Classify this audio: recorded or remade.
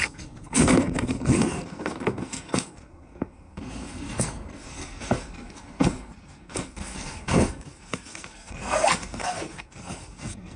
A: remade